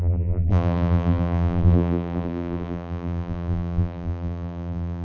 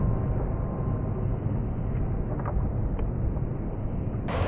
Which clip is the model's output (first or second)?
first